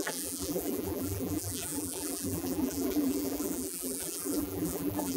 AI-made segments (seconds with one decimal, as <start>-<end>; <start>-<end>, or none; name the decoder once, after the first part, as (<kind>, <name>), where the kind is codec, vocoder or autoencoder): 0.0-5.2 (vocoder, BigVGAN v2)